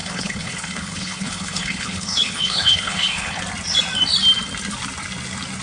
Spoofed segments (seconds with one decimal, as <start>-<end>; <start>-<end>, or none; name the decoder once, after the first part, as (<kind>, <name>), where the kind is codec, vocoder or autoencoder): 0.0-3.4 (codec, HILCodec)